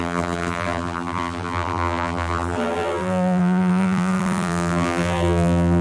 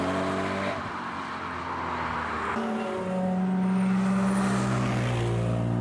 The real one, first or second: second